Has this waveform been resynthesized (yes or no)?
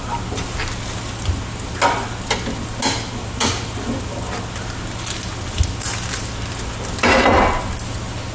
no